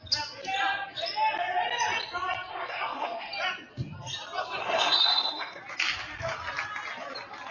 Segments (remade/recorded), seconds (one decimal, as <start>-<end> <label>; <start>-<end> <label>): 0.0-2.5 recorded; 2.5-3.3 remade; 3.3-4.6 recorded; 4.6-5.6 remade; 5.6-7.5 recorded